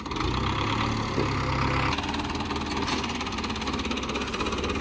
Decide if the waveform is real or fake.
real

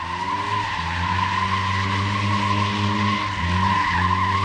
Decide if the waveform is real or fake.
real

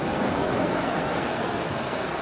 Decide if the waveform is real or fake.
fake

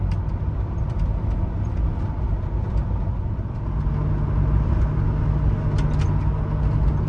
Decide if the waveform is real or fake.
real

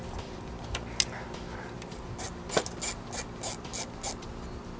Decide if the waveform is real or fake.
real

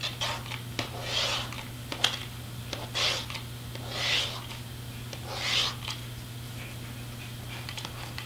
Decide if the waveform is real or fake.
real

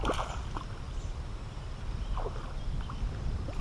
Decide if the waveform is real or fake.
real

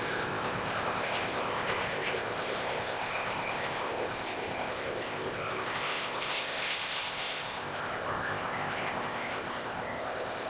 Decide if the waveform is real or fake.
fake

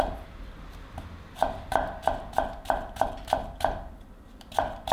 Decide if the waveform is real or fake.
fake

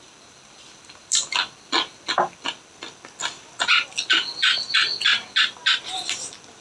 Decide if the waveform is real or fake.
real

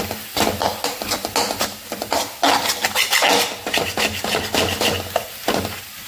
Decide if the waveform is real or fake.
real